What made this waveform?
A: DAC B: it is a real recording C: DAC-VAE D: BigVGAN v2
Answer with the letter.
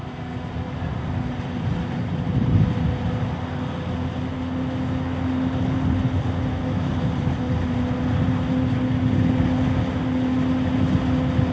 B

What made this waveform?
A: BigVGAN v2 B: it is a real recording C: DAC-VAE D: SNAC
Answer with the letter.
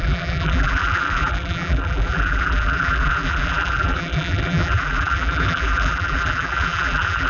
A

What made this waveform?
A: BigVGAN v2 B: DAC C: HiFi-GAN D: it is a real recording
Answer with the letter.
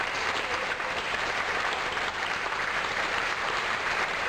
A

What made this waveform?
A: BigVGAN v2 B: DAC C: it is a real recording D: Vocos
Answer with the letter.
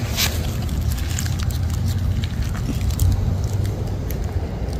C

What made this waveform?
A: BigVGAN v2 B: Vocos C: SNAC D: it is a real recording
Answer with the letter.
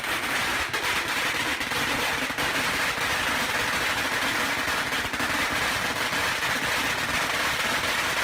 D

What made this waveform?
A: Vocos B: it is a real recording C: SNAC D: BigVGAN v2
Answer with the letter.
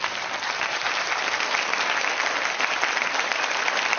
D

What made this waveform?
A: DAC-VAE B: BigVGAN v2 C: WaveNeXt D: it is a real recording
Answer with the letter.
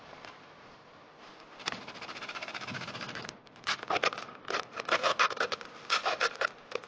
B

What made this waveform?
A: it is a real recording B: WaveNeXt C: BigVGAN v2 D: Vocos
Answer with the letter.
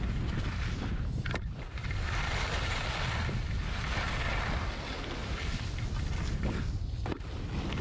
A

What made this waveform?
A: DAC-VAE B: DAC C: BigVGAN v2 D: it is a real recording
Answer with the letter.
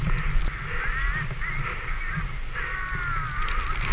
D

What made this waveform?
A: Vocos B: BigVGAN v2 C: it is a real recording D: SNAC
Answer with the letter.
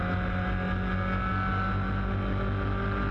C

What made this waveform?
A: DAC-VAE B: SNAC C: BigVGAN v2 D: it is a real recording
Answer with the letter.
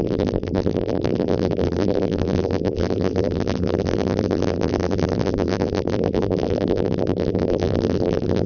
C